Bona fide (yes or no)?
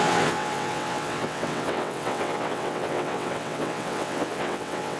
no